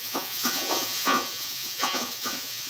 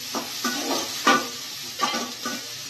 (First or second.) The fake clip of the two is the first